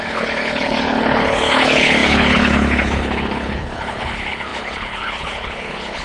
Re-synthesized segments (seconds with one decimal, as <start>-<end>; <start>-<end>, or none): 0.0-6.0